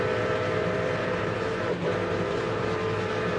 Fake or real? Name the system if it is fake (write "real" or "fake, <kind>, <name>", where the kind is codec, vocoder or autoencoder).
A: fake, vocoder, BigVGAN v2